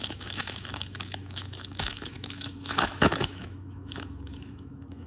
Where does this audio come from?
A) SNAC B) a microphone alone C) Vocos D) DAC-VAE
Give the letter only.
D